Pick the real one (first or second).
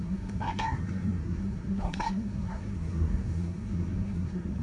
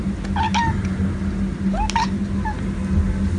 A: second